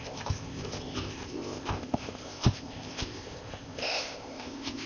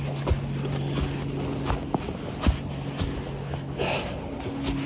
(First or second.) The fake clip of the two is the first